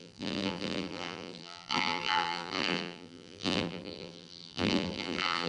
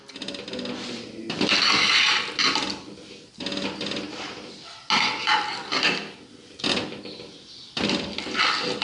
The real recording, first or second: second